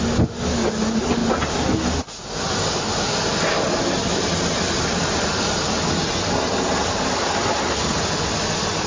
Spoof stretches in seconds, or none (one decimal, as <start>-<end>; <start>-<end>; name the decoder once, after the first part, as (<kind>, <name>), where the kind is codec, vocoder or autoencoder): none